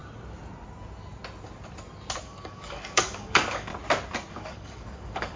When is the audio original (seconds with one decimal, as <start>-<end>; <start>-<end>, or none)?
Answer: 0.0-2.2; 3.7-4.3